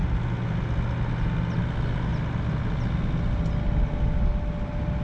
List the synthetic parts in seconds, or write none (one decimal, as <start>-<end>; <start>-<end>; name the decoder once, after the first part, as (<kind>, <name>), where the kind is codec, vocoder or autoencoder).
none